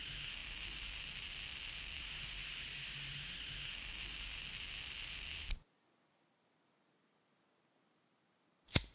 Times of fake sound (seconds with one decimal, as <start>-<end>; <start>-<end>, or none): none